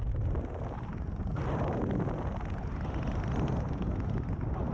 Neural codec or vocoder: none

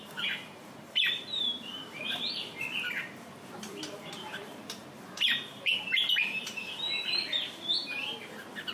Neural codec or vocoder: vocoder, BigVGAN v2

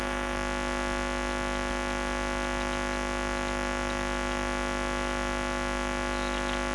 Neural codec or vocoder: none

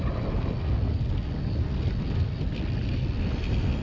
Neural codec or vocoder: none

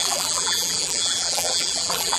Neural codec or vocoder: vocoder, BigVGAN v2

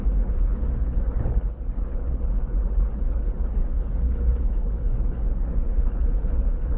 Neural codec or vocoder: codec, HILCodec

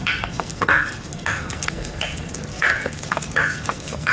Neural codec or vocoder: codec, SNAC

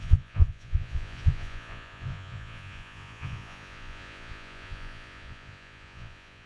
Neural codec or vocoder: vocoder, Vocos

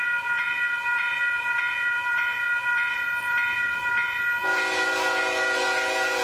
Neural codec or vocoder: vocoder, Vocos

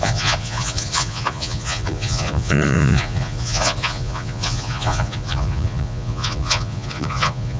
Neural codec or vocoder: vocoder, Vocos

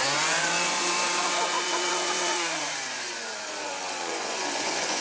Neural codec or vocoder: vocoder, Vocos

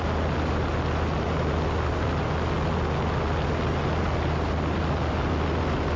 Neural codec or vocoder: none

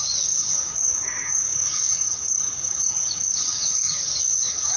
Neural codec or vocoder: codec, DAC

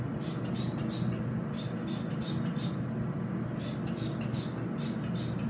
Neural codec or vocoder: none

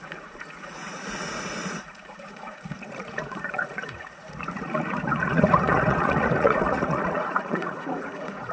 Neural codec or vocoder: vocoder, Vocos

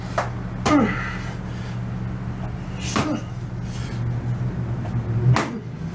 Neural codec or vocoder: none